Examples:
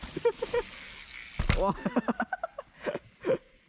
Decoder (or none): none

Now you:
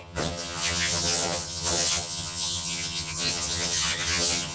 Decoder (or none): vocoder, HiFi-GAN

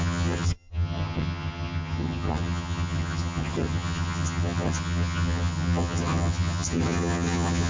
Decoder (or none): vocoder, HiFi-GAN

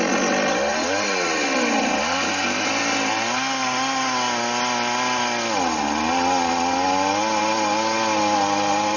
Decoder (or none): none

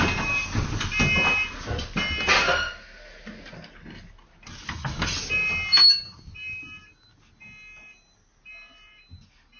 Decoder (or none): none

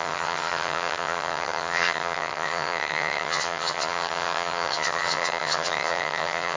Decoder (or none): vocoder, HiFi-GAN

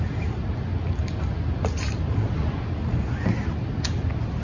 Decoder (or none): none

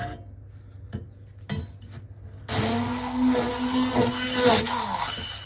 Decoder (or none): none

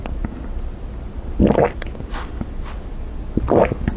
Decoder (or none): none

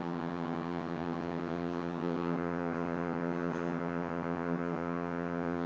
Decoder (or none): vocoder, HiFi-GAN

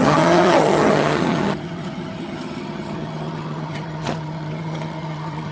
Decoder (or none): vocoder, HiFi-GAN